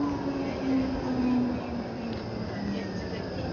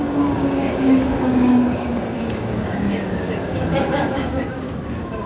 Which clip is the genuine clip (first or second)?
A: first